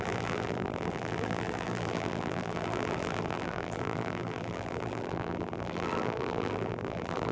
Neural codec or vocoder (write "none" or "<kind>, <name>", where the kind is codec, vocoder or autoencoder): vocoder, BigVGAN v2